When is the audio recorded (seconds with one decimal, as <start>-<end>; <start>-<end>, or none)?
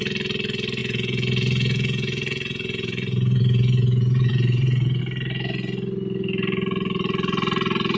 0.0-0.8; 5.0-8.0